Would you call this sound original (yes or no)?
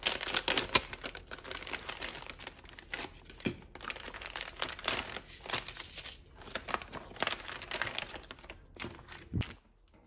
yes